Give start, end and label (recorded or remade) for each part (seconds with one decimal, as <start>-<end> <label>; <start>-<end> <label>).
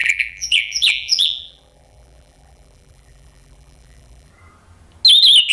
0.0-4.3 remade; 4.3-5.5 recorded